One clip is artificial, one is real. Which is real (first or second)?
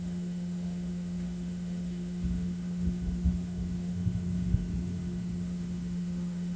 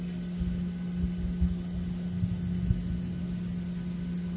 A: second